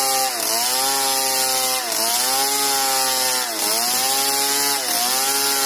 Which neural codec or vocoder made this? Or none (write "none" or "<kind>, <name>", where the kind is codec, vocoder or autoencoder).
none